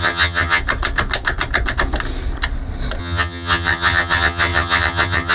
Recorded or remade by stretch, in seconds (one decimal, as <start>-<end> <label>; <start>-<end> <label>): 0.0-0.6 remade; 0.6-3.0 recorded; 3.0-5.3 remade